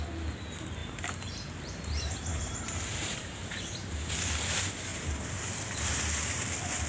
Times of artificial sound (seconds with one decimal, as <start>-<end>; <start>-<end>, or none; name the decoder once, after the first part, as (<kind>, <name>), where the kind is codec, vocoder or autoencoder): 0.8-4.1 (vocoder, BigVGAN v2); 4.9-6.0